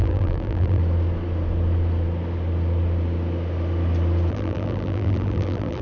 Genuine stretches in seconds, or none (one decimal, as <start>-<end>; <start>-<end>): 0.8-4.3